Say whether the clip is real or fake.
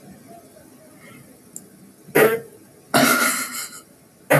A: real